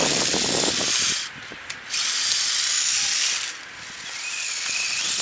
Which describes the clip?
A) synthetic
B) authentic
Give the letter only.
B